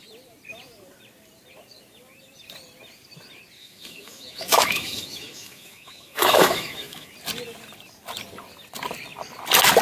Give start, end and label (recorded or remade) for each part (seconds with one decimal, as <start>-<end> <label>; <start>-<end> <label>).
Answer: 0.0-3.6 recorded; 3.6-7.1 remade; 7.1-9.8 recorded